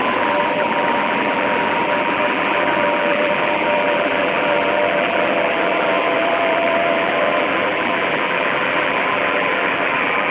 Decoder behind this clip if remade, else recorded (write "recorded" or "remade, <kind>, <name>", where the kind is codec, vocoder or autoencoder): remade, vocoder, BigVGAN v2